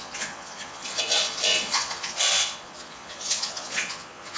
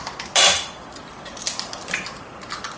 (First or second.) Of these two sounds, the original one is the second